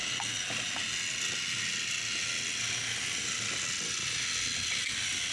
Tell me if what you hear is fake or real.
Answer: real